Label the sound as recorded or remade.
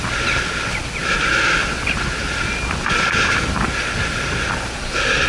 recorded